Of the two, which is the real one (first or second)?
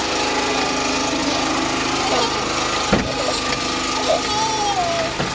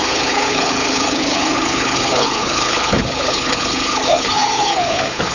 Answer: first